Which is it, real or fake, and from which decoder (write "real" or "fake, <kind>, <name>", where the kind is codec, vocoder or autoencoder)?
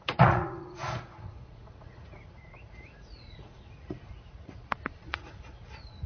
fake, vocoder, Vocos